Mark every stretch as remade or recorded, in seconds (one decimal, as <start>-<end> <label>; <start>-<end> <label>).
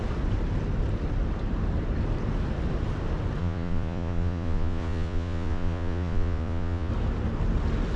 0.0-3.4 recorded; 3.4-6.9 remade; 6.9-8.0 recorded